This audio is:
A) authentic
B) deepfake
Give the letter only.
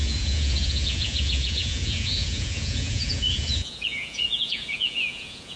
B